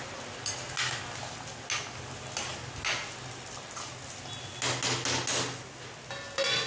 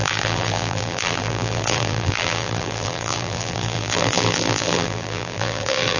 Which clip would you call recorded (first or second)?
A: first